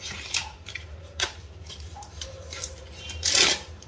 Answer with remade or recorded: remade